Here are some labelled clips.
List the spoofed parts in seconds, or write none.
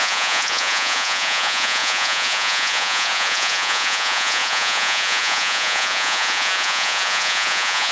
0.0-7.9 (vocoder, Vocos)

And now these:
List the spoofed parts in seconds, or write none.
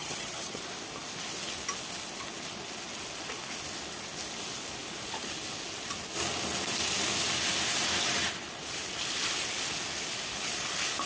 0.0-0.6 (vocoder, HiFi-GAN)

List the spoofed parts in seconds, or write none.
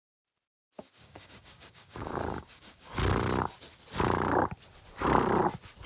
0.8-2.9 (codec, DAC)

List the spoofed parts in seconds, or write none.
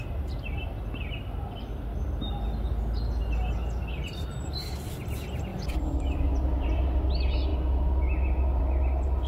none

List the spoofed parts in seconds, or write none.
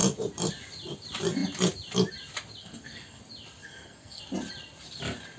2.6-3.2 (codec, SNAC); 3.6-4.2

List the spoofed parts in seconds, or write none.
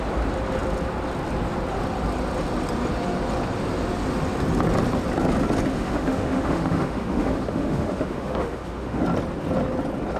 5.7-9.0 (autoencoder, DAC-VAE)